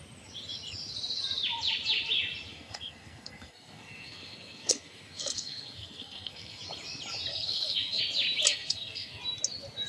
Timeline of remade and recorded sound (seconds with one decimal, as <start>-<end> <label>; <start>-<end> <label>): 0.0-2.5 recorded; 2.5-6.6 remade; 6.6-7.3 recorded; 7.3-8.0 remade; 8.0-8.5 recorded; 8.5-9.2 remade; 9.2-9.9 recorded